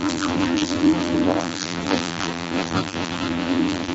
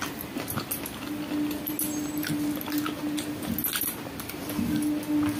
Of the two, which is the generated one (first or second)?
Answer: first